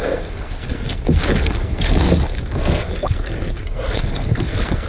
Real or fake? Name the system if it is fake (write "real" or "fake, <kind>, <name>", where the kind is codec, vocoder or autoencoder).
fake, codec, SNAC